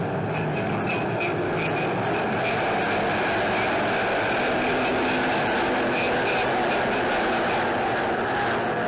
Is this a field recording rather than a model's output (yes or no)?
yes